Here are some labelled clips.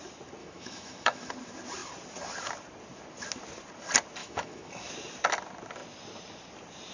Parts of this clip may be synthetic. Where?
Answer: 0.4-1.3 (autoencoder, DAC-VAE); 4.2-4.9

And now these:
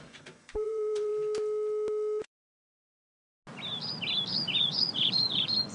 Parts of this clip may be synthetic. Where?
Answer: 0.0-1.1 (vocoder, Vocos); 2.2-3.2; 4.6-5.7